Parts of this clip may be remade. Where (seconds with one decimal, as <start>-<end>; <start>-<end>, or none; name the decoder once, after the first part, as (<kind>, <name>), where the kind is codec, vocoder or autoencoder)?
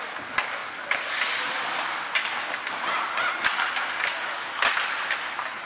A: none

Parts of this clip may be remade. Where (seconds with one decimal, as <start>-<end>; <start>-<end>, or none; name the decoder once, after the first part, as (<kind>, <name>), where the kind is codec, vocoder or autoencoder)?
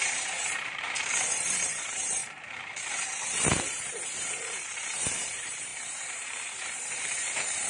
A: 0.0-7.7 (vocoder, BigVGAN v2)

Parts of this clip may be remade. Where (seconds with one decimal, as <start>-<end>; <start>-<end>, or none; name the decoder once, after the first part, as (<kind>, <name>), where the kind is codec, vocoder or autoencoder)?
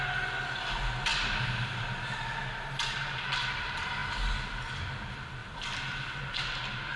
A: 5.4-6.6 (vocoder, BigVGAN v2)